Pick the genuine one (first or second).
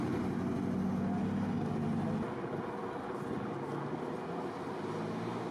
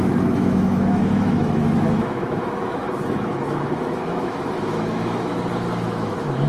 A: first